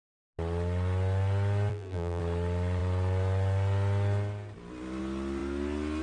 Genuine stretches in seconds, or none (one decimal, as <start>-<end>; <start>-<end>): 0.0-1.7; 2.2-6.0